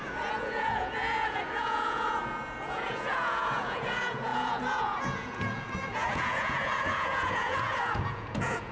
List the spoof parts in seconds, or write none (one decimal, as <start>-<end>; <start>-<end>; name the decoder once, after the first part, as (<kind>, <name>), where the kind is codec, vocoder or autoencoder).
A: 0.0-8.7 (vocoder, Vocos)